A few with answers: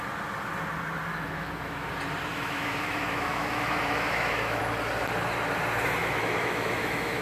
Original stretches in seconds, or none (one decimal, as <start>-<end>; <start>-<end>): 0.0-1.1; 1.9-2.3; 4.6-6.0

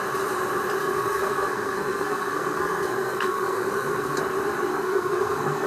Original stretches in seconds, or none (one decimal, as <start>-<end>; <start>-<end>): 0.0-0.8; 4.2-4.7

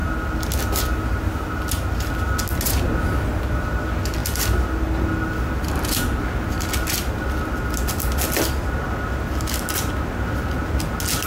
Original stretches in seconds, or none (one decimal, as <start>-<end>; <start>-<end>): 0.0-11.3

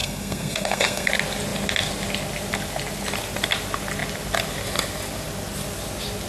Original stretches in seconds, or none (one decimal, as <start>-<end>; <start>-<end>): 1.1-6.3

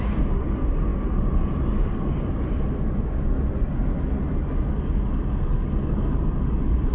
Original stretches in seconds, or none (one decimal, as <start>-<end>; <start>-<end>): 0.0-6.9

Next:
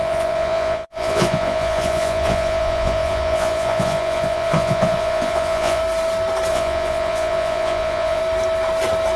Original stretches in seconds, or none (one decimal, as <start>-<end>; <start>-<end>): 5.8-6.5; 8.2-9.2

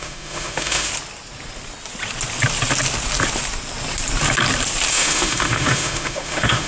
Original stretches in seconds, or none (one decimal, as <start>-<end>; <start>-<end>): 0.9-4.9